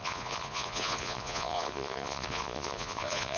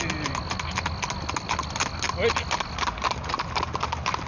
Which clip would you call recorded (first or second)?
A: second